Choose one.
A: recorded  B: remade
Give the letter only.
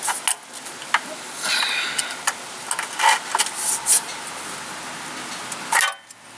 A